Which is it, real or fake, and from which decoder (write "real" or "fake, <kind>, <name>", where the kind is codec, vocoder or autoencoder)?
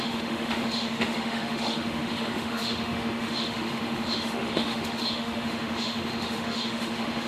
fake, autoencoder, DAC-VAE